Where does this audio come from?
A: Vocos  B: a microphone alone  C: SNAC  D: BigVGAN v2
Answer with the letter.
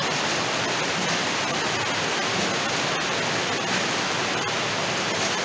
B